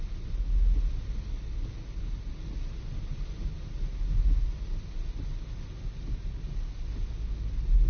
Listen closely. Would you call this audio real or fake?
real